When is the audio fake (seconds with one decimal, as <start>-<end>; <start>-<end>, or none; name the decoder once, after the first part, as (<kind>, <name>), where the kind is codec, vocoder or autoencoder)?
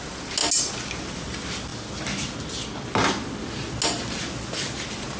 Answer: none